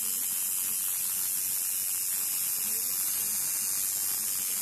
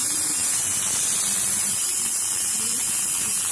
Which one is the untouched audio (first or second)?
first